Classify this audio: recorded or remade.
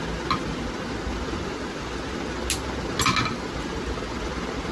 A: recorded